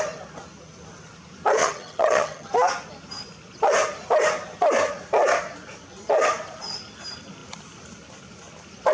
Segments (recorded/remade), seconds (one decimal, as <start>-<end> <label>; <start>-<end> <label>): 0.0-1.6 recorded; 1.6-2.5 remade; 2.5-8.9 recorded